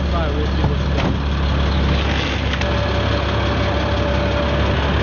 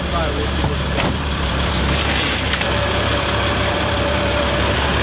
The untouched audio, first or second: first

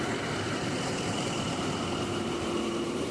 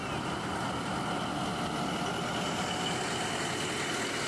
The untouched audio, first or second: second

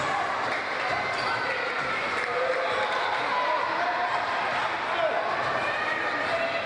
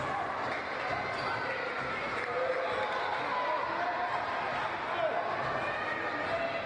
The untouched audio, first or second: second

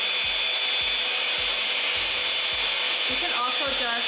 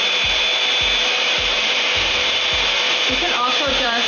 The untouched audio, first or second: first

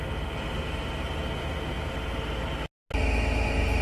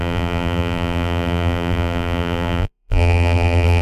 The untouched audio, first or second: first